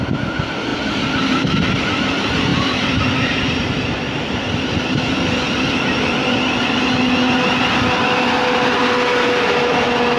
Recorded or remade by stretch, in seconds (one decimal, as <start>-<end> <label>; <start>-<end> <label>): 0.0-2.5 recorded; 2.5-5.1 remade; 5.1-10.2 recorded